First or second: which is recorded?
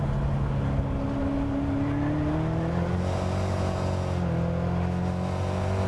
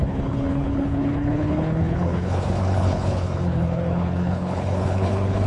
first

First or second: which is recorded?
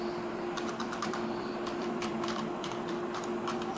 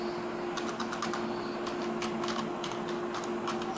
second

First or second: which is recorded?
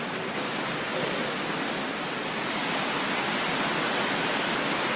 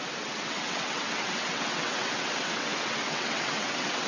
first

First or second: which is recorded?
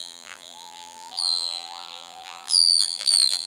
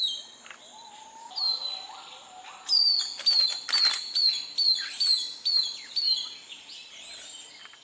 second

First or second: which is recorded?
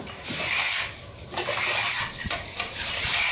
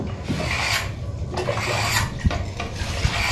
second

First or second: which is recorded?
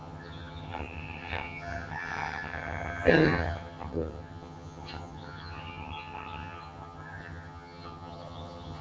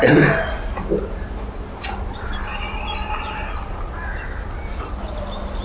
second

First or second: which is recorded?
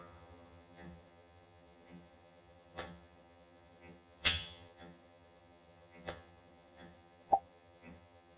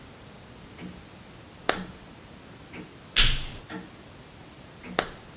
second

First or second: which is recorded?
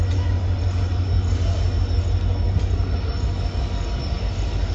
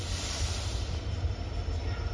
first